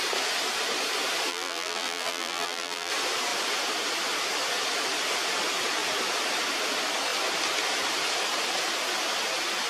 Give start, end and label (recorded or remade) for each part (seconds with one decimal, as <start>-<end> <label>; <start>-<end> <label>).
0.0-1.3 recorded; 1.3-2.9 remade; 2.9-9.7 recorded